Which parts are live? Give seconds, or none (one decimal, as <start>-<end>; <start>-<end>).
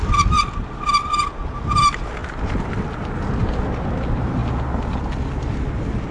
0.0-6.1